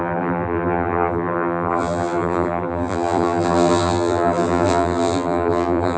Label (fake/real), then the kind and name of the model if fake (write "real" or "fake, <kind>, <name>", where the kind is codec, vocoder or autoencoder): fake, vocoder, BigVGAN v2